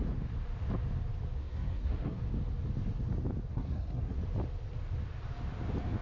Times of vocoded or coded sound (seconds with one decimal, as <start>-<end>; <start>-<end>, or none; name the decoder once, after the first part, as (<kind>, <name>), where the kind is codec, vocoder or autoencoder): 1.4-2.2 (codec, SNAC); 3.5-4.2